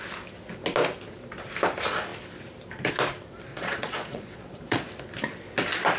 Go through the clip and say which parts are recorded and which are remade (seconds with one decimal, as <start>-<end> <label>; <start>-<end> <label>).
0.0-3.5 recorded; 3.5-4.9 remade; 4.9-6.0 recorded